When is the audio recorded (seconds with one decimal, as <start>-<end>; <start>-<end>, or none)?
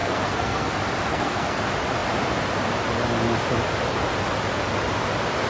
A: 0.7-1.1; 1.6-5.5